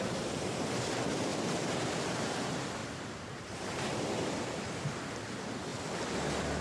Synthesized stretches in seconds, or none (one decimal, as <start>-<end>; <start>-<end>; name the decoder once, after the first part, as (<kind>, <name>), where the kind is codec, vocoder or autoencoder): 2.8-5.2 (vocoder, BigVGAN v2)